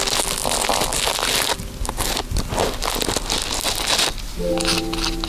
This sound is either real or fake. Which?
real